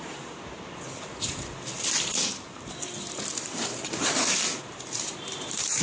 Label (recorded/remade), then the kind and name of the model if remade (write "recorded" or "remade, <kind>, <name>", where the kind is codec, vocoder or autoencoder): remade, vocoder, BigVGAN v2